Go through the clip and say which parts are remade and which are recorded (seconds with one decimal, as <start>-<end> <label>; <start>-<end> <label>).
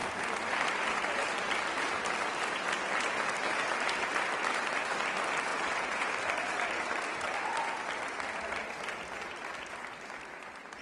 0.0-5.5 recorded; 5.5-6.1 remade; 6.1-10.8 recorded